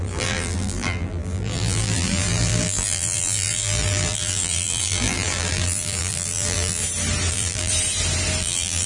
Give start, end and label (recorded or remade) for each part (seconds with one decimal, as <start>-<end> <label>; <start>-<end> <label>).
0.0-6.8 remade; 6.8-7.3 recorded; 7.3-7.7 remade; 7.7-8.4 recorded; 8.4-8.9 remade